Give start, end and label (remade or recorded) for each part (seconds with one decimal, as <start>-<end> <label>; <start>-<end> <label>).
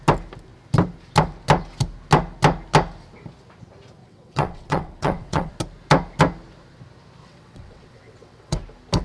0.0-4.0 recorded; 4.0-5.5 remade; 5.5-7.2 recorded; 7.2-8.6 remade; 8.6-9.0 recorded